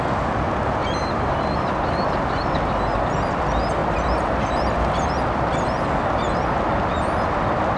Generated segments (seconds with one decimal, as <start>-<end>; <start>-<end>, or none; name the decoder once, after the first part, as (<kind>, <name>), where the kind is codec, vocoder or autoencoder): 0.8-2.4 (vocoder, BigVGAN v2); 3.8-5.1

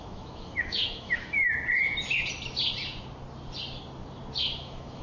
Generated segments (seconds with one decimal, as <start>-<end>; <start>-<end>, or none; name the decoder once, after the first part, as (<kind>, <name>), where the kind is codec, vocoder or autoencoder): 0.0-1.4 (autoencoder, DAC-VAE); 4.4-5.0

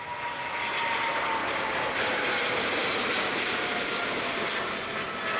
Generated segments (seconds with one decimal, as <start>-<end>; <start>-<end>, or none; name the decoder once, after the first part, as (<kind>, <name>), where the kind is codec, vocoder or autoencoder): none